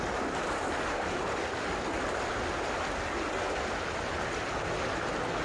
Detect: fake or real real